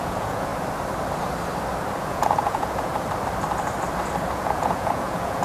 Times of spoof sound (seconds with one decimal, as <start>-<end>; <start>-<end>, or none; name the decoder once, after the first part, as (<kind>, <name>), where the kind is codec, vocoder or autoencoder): 0.0-0.5 (vocoder, Vocos); 2.0-2.9; 4.3-5.4